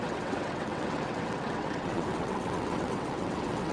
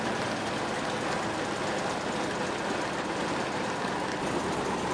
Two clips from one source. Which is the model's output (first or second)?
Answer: first